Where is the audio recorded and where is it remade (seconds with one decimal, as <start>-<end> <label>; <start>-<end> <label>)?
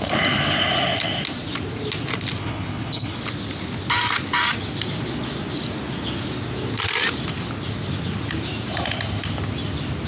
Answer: 0.0-2.4 recorded; 2.4-3.2 remade; 3.2-10.1 recorded